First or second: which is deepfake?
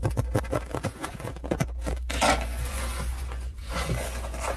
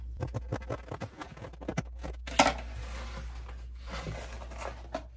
first